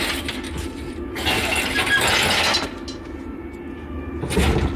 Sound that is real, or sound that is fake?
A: real